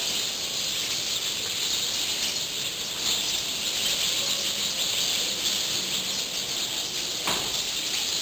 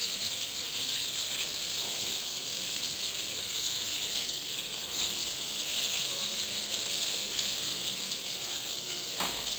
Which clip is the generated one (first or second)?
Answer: second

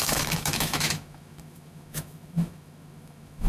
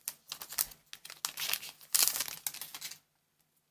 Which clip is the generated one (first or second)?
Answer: first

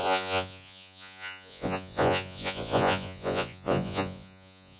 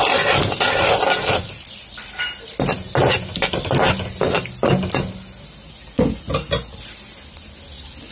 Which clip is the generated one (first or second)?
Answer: first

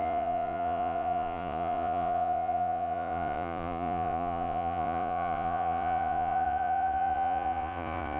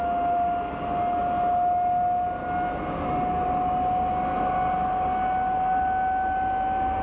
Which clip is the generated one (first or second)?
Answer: first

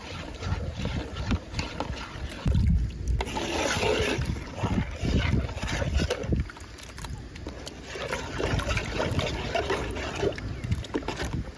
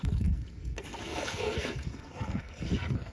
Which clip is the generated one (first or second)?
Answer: second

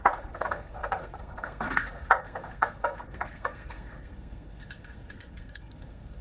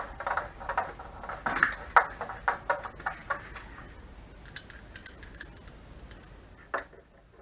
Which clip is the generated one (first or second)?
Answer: first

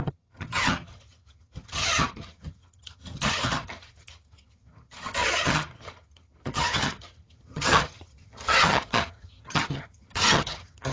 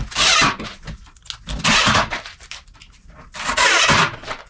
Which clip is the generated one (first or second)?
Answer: first